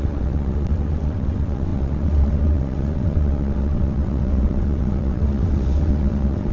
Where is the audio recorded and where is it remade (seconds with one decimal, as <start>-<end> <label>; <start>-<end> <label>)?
0.0-6.5 remade